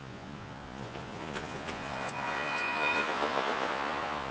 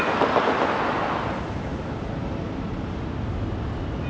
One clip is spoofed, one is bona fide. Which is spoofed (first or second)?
first